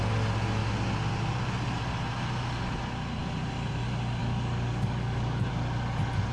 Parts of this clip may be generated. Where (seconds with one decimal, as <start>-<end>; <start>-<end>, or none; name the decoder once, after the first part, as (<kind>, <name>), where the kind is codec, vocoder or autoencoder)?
4.2-5.5 (codec, DAC)